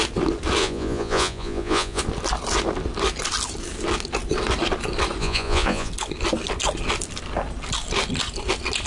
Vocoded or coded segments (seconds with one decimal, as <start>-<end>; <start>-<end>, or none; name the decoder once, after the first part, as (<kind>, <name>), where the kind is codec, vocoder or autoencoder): 0.6-2.0 (vocoder, Vocos); 5.2-5.9